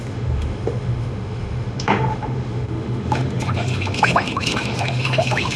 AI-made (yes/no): yes